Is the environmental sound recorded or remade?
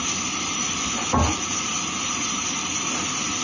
recorded